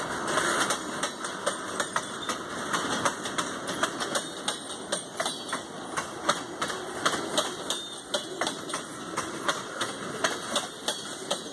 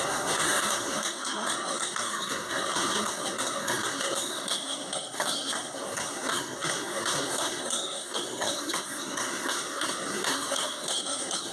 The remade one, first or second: second